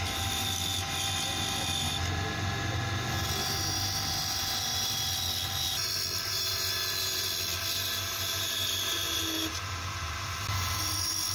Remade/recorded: recorded